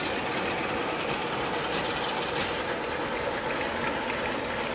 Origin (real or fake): real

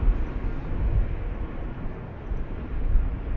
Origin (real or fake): real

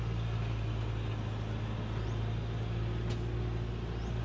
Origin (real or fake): real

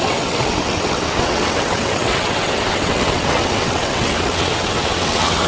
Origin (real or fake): fake